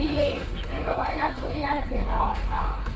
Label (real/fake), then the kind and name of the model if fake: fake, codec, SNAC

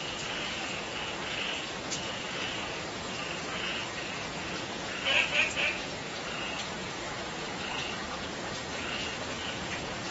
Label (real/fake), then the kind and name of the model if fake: fake, vocoder, Vocos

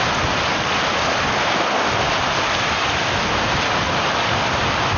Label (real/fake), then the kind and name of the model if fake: real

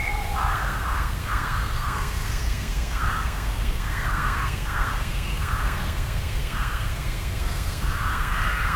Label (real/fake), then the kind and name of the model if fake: fake, codec, SNAC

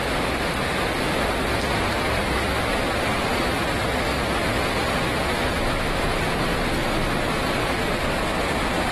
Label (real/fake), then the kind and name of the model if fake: real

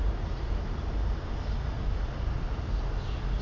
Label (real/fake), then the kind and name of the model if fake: fake, vocoder, BigVGAN v2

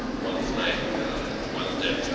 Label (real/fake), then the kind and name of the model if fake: real